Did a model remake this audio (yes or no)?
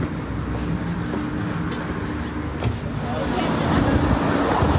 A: no